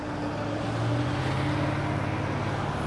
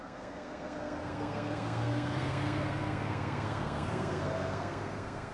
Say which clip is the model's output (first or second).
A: second